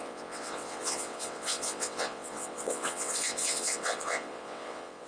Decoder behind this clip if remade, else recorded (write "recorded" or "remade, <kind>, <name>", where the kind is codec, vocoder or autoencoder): remade, vocoder, WaveNeXt